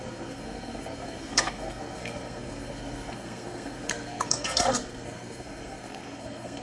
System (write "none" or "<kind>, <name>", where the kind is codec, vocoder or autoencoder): codec, SNAC